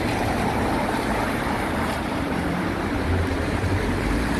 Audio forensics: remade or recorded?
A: remade